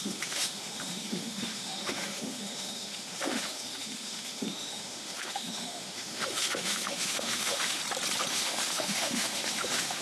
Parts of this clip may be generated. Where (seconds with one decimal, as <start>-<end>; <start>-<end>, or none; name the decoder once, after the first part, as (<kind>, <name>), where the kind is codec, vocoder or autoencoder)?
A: 0.0-7.8 (autoencoder, DAC-VAE); 8.3-10.0